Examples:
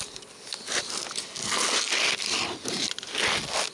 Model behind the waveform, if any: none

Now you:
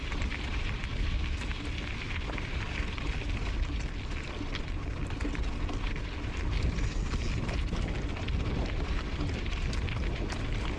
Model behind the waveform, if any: none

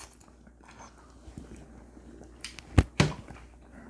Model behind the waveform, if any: none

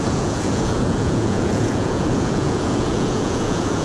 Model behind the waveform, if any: vocoder, Vocos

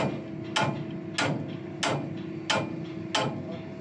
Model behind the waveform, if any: none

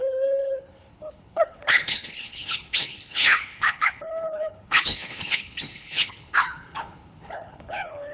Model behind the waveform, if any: codec, HILCodec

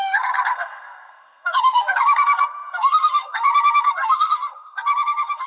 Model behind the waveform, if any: codec, SNAC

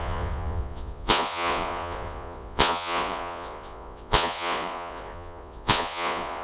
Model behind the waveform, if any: vocoder, Vocos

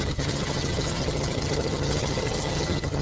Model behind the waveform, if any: vocoder, HiFi-GAN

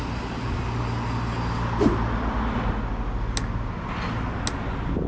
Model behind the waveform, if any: none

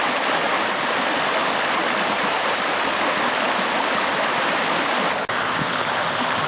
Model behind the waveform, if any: none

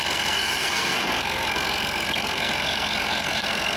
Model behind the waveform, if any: codec, SNAC